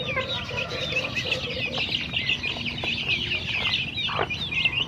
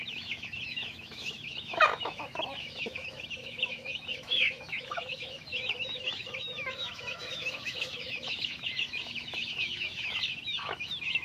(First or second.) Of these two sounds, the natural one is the first